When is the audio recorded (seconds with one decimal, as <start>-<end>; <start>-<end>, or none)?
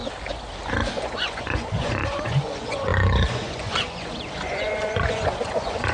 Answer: 0.0-0.9